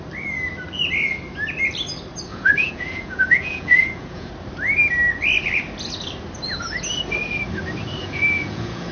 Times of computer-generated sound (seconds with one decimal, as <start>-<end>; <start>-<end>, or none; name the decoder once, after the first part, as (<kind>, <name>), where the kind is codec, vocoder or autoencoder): 2.3-4.3 (vocoder, Vocos); 8.0-8.9